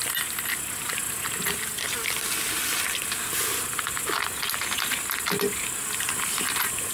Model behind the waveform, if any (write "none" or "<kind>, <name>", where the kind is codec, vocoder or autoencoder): none